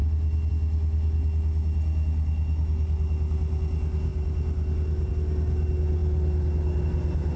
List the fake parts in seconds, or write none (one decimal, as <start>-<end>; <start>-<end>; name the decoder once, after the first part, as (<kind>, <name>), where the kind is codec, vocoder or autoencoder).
none